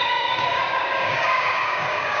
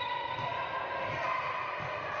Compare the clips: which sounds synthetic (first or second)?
first